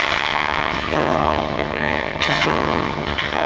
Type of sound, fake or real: fake